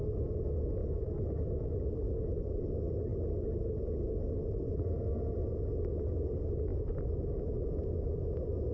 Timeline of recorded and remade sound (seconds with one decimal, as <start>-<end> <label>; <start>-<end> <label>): 0.0-8.7 recorded